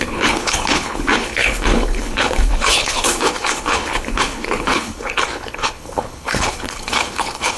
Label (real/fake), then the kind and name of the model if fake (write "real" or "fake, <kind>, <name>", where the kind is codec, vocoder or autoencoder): fake, codec, HILCodec